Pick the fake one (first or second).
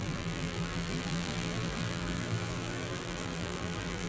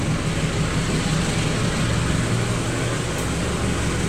first